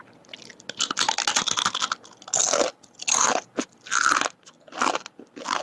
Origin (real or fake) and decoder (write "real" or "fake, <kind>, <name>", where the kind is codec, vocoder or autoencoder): real